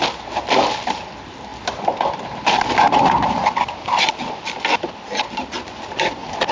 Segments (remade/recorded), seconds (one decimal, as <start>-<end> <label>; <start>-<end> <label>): 0.0-6.5 recorded